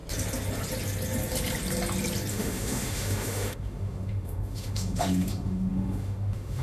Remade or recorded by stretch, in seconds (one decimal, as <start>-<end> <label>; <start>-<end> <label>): 0.0-2.3 recorded; 2.3-6.6 remade